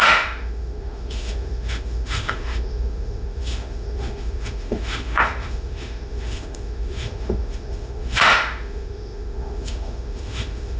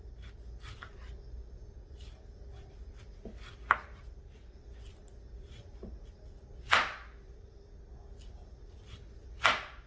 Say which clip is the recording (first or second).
second